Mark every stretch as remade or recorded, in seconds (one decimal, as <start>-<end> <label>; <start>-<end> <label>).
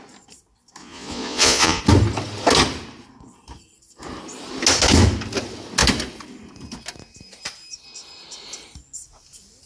0.0-0.8 recorded; 0.8-1.8 remade; 1.8-9.7 recorded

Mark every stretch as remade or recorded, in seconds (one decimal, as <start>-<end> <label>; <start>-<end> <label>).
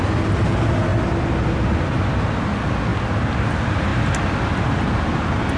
0.0-5.6 recorded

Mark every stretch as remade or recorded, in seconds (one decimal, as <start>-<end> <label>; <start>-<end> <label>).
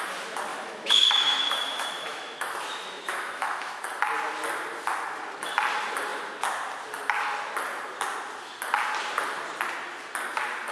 0.0-0.5 recorded; 0.5-3.8 remade; 3.8-10.7 recorded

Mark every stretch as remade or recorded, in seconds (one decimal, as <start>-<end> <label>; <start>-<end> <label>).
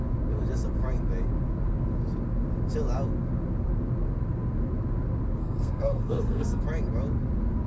0.0-5.4 recorded; 5.4-6.6 remade; 6.6-7.7 recorded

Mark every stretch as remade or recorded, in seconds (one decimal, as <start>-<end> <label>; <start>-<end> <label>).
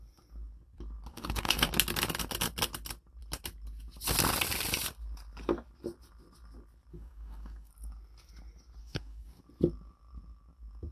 0.0-1.1 recorded; 1.1-1.7 remade; 1.7-6.9 recorded; 6.9-7.7 remade; 7.7-8.8 recorded; 8.8-9.4 remade; 9.4-10.9 recorded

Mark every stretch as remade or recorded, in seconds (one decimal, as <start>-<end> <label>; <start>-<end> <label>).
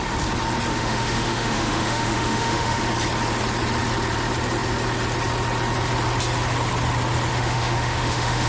0.0-0.7 recorded; 0.7-2.8 remade; 2.8-7.3 recorded; 7.3-8.5 remade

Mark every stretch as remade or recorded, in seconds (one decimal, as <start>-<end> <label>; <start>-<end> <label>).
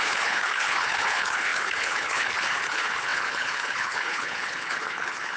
0.0-5.4 remade